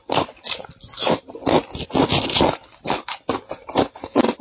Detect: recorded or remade recorded